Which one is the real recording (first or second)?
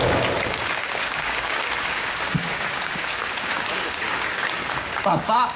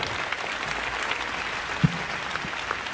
second